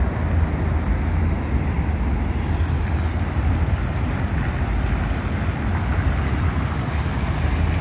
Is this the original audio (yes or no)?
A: yes